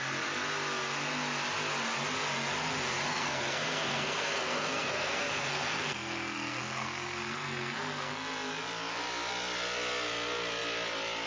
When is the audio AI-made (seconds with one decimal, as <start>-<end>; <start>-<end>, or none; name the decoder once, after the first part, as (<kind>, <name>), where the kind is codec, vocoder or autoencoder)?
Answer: 3.1-8.1 (codec, SNAC)